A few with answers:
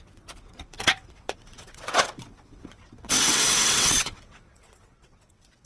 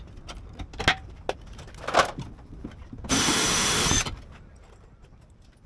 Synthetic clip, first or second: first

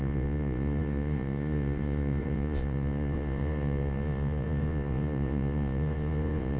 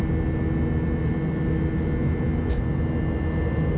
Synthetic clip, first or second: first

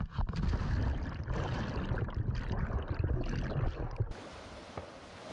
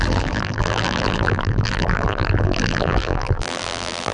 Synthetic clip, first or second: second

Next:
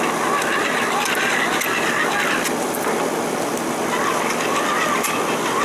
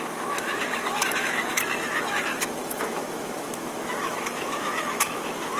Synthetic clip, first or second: second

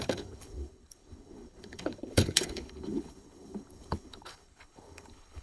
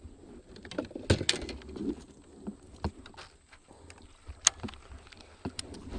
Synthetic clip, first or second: first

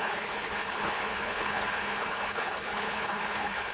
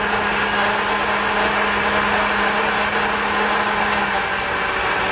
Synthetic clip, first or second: first